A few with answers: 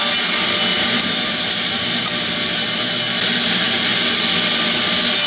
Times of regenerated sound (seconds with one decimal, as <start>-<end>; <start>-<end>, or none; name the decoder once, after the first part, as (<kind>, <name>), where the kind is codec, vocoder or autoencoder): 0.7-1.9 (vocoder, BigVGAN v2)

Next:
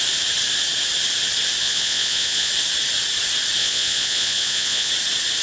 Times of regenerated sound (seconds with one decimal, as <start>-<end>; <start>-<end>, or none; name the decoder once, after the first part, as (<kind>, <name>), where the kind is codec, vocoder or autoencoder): 1.6-2.5 (vocoder, Vocos); 3.6-4.9

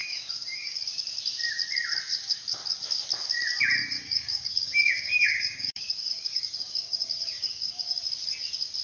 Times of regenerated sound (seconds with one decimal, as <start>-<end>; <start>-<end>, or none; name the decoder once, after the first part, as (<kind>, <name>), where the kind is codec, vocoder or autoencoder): 0.0-0.8 (codec, DAC); 3.8-8.0

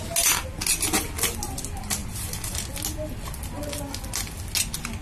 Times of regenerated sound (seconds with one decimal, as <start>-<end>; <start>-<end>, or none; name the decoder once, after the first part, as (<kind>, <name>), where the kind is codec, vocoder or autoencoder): none